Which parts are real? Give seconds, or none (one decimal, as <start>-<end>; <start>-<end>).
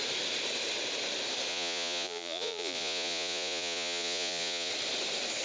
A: 0.0-1.5; 4.7-5.4